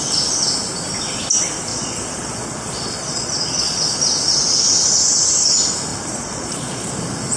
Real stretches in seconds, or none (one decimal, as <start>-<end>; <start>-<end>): 0.0-1.7; 3.8-5.9; 6.9-7.4